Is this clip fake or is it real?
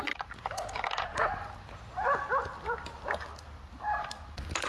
real